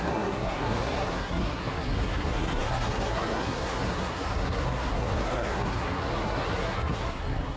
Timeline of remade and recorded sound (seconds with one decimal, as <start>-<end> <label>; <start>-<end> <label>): 0.0-7.6 remade